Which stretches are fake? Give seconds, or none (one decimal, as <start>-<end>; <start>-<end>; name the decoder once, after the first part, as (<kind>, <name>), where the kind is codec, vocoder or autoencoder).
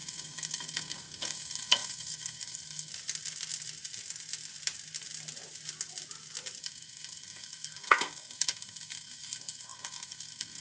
0.0-2.9 (codec, SNAC); 6.6-10.6